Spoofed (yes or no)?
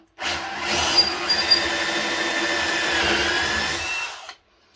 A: no